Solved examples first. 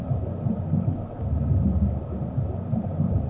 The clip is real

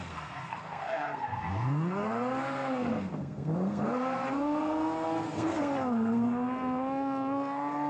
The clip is fake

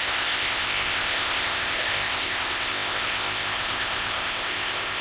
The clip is fake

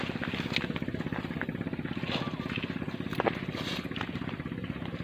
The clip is real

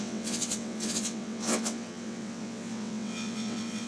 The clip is fake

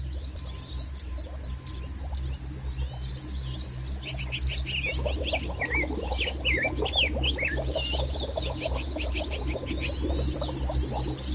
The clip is real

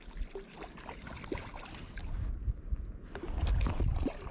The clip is real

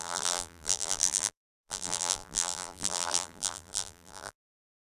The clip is fake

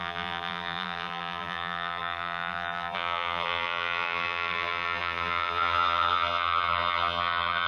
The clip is fake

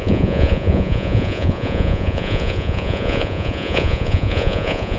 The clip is fake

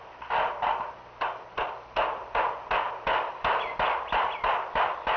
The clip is real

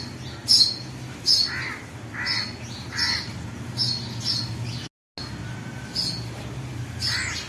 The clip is real